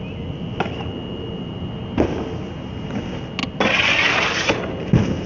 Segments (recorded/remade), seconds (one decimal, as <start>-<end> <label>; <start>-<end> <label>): 0.0-5.3 recorded